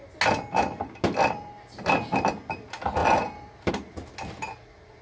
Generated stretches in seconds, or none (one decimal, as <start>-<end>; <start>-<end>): 3.0-3.7